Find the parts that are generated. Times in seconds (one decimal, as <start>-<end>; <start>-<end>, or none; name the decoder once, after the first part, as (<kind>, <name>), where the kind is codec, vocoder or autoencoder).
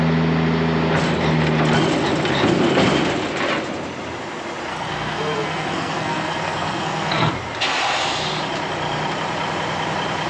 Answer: 4.7-7.3 (codec, SNAC)